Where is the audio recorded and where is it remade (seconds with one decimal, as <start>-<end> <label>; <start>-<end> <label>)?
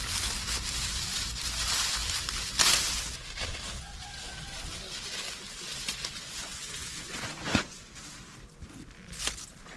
0.0-6.2 recorded; 6.2-8.0 remade; 8.0-9.8 recorded